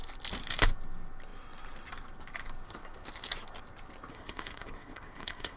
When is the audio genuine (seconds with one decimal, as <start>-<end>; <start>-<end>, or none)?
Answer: 0.0-4.1